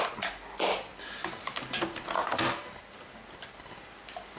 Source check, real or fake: real